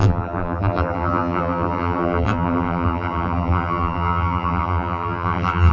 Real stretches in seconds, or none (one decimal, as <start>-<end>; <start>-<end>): none

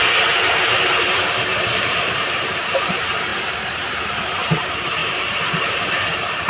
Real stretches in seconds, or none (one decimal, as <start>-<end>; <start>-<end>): none

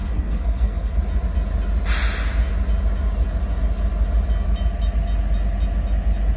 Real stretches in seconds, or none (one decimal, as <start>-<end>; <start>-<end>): 1.0-6.4

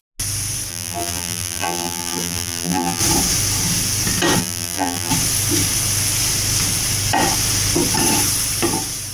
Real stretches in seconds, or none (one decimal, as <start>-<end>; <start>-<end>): 0.0-0.7; 3.0-4.4; 5.1-9.1

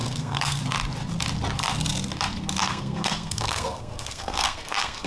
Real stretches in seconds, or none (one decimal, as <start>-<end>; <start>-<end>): 0.6-2.6